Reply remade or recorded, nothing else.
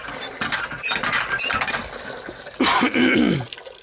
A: recorded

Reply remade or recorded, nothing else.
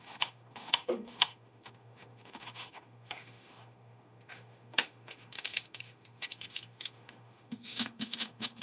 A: remade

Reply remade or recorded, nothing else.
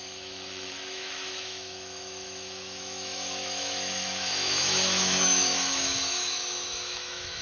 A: remade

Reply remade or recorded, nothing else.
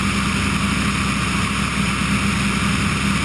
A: recorded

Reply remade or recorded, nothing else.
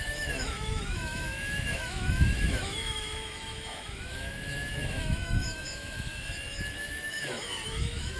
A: remade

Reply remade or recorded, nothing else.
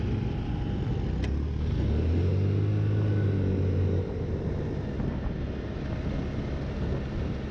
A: recorded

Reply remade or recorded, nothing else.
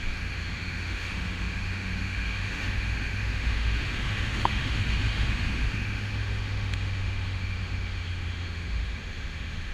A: remade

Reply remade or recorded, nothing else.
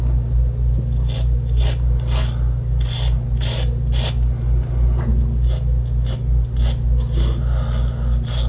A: recorded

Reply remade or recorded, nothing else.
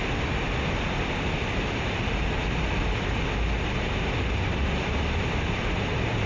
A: recorded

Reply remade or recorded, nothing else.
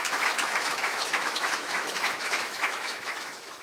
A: remade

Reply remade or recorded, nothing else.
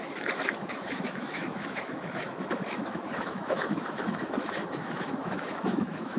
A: remade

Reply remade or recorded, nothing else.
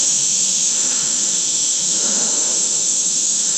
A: remade